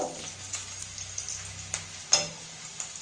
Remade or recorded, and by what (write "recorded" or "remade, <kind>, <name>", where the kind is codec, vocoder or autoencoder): recorded